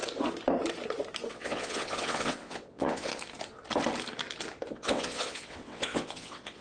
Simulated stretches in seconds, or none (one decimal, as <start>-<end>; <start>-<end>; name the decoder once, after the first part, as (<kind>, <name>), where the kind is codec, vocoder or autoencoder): 1.3-3.1 (vocoder, WaveNeXt); 4.7-6.6